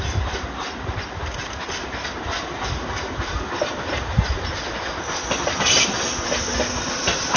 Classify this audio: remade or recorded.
recorded